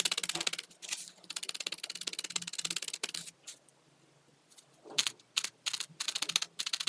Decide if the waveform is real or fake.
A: real